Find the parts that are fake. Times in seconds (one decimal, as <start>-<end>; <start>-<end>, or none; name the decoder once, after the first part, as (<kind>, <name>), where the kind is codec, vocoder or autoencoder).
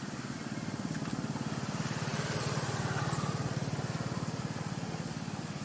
none